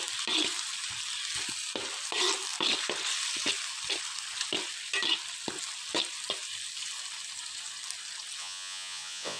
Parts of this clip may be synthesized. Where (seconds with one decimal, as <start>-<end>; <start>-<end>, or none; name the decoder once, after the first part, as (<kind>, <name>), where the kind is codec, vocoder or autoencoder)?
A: 8.4-9.4 (vocoder, Vocos)